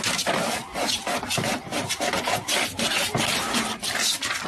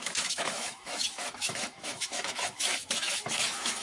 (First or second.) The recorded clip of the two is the first